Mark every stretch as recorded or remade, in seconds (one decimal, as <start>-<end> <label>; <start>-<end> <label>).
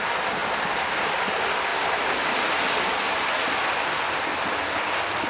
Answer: 0.0-5.3 recorded